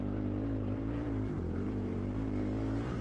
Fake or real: fake